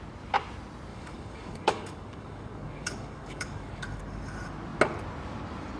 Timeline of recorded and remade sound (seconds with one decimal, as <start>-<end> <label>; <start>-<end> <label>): 0.0-0.9 recorded; 0.9-4.0 remade; 4.0-5.8 recorded